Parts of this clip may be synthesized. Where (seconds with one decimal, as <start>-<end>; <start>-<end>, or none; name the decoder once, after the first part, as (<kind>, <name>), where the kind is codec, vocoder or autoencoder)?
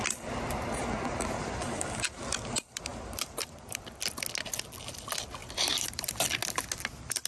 2.9-4.0 (vocoder, BigVGAN v2); 5.4-6.1